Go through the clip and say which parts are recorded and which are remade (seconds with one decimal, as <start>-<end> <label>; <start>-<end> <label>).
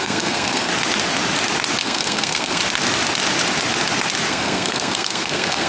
0.0-0.7 remade; 0.7-1.8 recorded; 1.8-2.6 remade; 2.6-4.3 recorded; 4.3-5.7 remade